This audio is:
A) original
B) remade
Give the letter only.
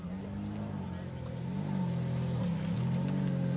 A